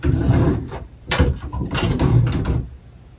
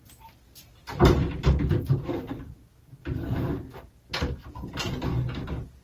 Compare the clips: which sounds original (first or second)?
second